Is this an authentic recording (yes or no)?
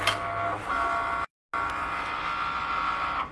yes